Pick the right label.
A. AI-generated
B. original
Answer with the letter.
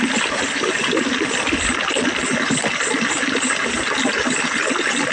B